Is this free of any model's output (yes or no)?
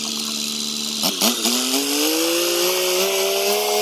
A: yes